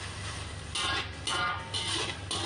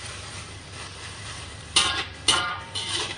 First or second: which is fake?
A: second